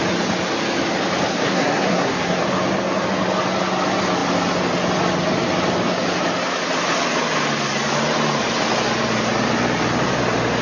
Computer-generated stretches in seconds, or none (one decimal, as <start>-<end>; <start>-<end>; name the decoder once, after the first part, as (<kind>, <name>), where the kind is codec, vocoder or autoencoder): 1.3-2.4 (codec, SNAC)